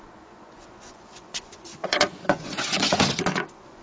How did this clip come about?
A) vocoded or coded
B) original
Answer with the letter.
A